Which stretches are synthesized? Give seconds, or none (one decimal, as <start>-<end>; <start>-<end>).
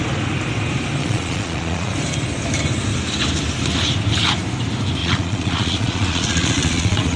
1.0-1.9; 5.0-7.2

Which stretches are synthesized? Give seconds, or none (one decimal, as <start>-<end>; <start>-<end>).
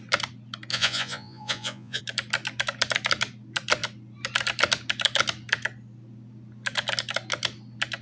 0.7-2.0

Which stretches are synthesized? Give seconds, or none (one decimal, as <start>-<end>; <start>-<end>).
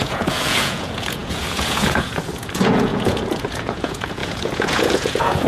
0.0-5.5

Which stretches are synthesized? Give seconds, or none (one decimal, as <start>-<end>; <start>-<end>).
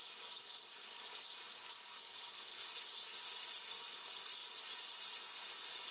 none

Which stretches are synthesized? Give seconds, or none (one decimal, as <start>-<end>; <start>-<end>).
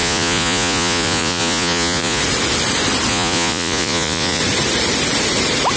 0.0-2.2; 3.1-4.4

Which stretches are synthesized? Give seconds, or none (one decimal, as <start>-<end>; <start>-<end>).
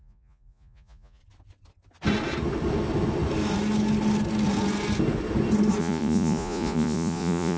0.0-1.2; 5.8-7.6